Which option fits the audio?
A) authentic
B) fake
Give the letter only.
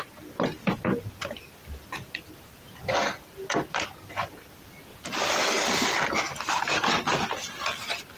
A